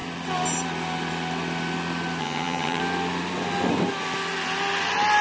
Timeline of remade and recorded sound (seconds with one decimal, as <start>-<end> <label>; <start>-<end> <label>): 0.0-2.2 recorded; 2.2-2.8 remade; 2.8-5.2 recorded